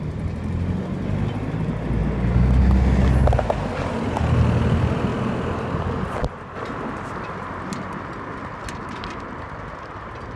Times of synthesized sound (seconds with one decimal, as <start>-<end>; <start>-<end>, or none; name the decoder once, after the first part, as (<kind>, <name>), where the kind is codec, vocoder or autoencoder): none